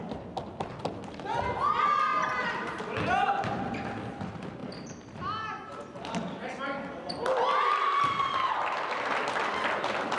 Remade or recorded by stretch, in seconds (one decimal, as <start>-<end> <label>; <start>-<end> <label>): 0.0-2.1 recorded; 2.1-2.8 remade; 2.8-10.2 recorded

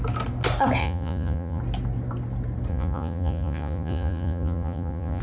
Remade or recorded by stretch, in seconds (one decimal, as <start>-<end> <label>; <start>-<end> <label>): 0.0-0.8 recorded; 0.8-1.6 remade; 1.6-2.7 recorded; 2.7-5.2 remade

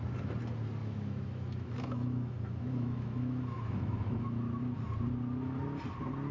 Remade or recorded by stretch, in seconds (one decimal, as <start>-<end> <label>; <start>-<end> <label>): 0.0-0.8 recorded; 0.8-4.6 remade; 4.6-6.3 recorded

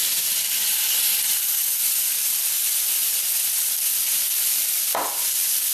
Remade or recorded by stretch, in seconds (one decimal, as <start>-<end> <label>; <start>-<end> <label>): 0.0-5.7 recorded

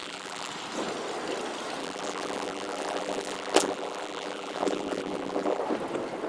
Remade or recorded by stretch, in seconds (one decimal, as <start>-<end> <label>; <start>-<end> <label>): 0.0-0.5 remade; 0.5-1.8 recorded; 1.8-5.6 remade; 5.6-6.3 recorded

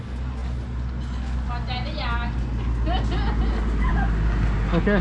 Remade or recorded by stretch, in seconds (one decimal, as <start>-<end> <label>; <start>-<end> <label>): 0.0-5.0 recorded

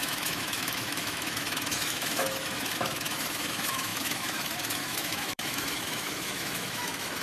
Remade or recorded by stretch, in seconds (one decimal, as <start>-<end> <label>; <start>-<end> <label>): 0.0-7.2 remade